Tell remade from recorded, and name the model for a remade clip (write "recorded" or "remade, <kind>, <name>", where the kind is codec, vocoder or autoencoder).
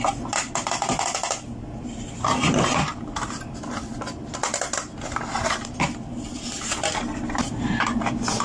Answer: recorded